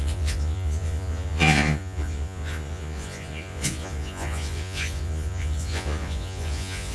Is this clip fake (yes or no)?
yes